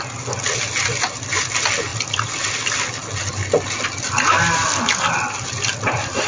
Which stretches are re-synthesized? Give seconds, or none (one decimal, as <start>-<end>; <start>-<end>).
none